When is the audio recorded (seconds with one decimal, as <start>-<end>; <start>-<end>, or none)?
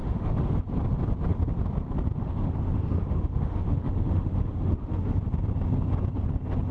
0.6-2.2; 5.2-6.7